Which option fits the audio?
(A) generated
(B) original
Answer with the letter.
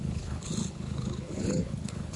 A